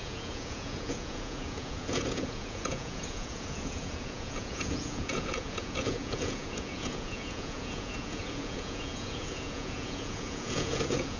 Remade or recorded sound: remade